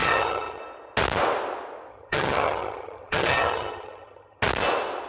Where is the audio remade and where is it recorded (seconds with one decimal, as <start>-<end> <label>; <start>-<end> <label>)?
0.0-0.6 remade; 0.6-1.9 recorded; 1.9-4.4 remade; 4.4-5.1 recorded